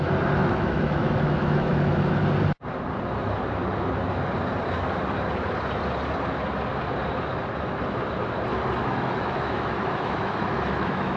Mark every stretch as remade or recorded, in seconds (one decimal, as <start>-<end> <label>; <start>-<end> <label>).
0.0-0.4 recorded; 0.4-2.1 remade; 2.1-8.8 recorded; 8.8-11.2 remade